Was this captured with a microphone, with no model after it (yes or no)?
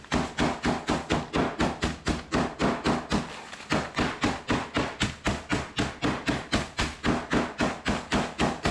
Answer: yes